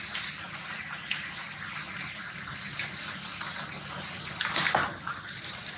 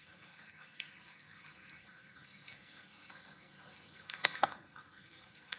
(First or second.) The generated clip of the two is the second